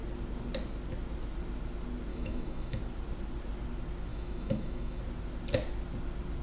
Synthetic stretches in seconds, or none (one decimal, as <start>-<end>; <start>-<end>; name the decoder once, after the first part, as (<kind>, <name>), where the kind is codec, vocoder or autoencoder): 2.1-2.8 (autoencoder, DAC-VAE); 4.1-5.0

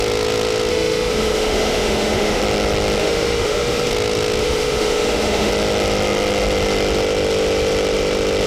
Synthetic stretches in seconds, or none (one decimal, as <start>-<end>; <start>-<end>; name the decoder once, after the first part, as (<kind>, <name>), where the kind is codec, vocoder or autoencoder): 0.7-2.4 (autoencoder, DAC-VAE); 3.0-3.9; 4.4-5.5

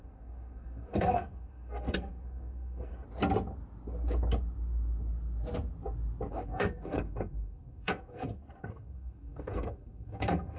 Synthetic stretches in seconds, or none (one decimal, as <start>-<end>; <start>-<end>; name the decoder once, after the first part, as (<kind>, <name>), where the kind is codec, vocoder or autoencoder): 0.0-2.9 (codec, SNAC); 6.3-10.6

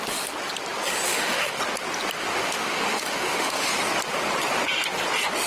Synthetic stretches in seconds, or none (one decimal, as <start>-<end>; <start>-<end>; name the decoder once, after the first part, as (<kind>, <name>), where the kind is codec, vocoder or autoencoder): 1.1-1.6 (autoencoder, DAC-VAE); 2.2-3.7

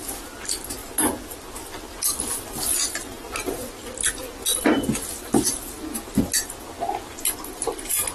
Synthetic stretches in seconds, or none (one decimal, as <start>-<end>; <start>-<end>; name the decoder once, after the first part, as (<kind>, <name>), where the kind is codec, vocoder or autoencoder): none

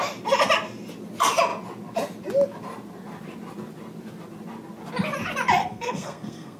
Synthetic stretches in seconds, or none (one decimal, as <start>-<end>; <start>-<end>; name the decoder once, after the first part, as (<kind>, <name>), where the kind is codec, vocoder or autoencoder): 5.6-6.6 (codec, SNAC)

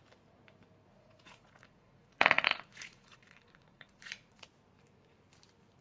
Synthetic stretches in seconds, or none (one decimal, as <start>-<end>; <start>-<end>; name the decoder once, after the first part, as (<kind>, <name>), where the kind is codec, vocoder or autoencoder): 0.9-4.4 (vocoder, Vocos)